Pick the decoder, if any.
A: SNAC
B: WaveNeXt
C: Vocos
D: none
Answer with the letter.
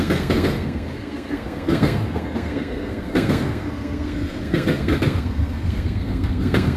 A